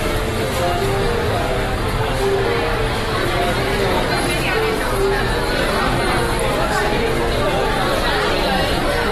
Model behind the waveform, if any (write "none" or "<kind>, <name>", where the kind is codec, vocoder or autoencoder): none